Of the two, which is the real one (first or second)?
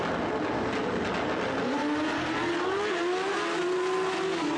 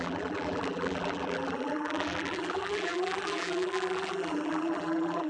first